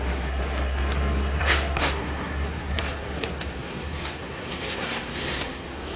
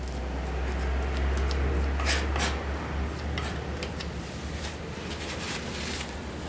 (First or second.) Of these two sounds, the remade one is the first